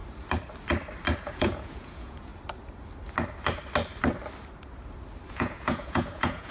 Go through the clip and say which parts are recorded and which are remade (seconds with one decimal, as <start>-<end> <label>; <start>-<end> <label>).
0.0-1.2 recorded; 1.2-2.3 remade; 2.3-5.3 recorded; 5.3-6.5 remade